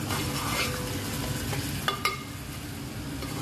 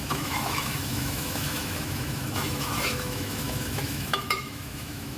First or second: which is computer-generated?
second